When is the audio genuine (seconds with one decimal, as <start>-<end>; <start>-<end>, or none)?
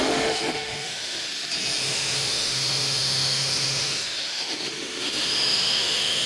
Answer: 1.3-1.8